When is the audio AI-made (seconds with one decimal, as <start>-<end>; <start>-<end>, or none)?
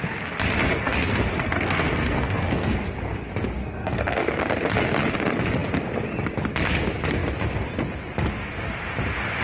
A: 0.7-2.8; 3.6-4.3